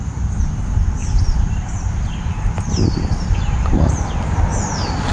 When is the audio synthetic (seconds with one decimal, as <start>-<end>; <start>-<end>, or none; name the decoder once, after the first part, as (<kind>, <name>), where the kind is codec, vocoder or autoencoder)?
1.0-4.1 (vocoder, BigVGAN v2)